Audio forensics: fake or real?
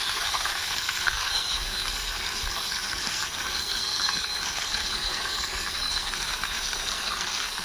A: fake